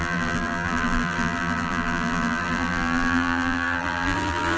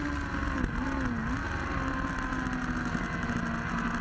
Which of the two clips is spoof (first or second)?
first